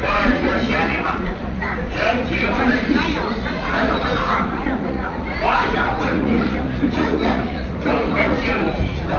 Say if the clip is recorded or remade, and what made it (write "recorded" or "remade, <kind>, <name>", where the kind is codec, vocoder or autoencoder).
remade, vocoder, Vocos